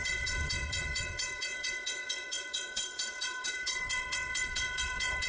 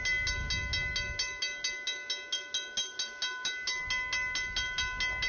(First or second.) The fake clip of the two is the first